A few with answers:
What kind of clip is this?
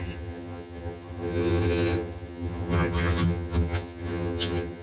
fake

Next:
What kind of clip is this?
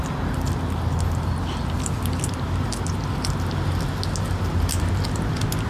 real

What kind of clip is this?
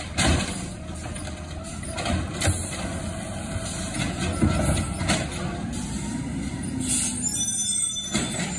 real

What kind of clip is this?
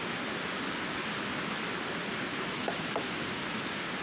real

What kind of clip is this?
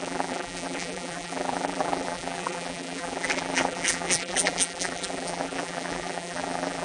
fake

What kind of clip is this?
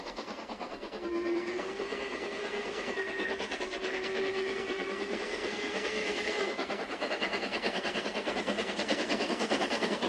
fake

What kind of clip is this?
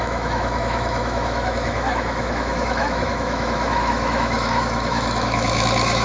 fake